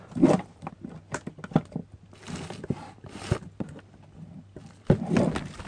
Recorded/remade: recorded